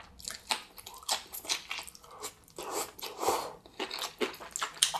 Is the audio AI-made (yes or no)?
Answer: no